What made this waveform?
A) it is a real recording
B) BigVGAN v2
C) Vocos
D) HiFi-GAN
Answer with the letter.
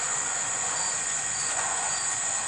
C